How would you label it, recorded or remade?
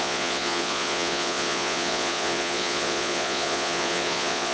remade